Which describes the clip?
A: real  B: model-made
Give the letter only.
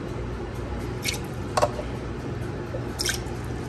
A